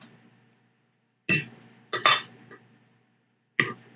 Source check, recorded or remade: recorded